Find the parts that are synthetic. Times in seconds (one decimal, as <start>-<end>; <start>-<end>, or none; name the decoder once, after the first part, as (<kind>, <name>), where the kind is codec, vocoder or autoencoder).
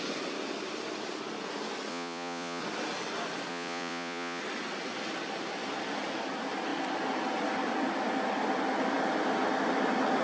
1.9-2.6 (vocoder, Vocos); 3.5-4.4